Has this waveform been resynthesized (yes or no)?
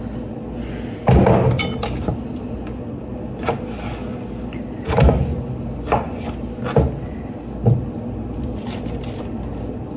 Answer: no